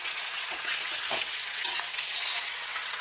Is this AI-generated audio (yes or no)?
yes